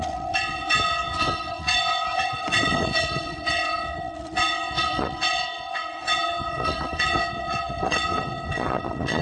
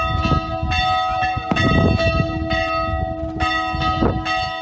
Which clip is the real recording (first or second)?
second